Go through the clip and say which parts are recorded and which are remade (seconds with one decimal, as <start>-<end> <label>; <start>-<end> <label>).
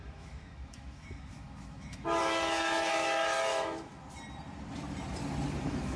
0.0-3.9 remade; 3.9-5.6 recorded; 5.6-6.0 remade